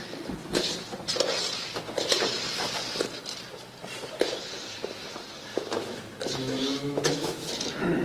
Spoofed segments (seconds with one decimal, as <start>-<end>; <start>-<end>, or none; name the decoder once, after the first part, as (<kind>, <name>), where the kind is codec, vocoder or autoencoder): 5.5-7.5 (autoencoder, DAC-VAE)